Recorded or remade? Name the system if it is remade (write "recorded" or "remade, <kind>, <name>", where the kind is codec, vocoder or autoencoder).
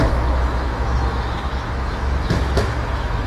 remade, autoencoder, DAC-VAE